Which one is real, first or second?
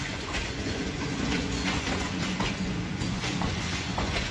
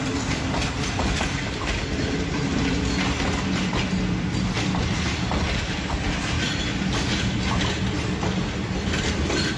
second